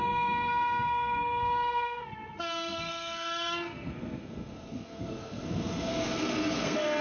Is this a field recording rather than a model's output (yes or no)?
no